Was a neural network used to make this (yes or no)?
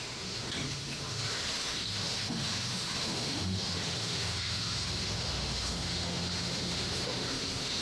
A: yes